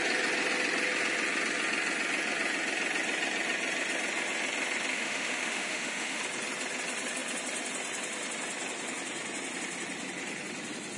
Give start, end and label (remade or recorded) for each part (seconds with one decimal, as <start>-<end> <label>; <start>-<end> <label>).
0.0-4.9 recorded; 4.9-6.2 remade; 6.2-11.0 recorded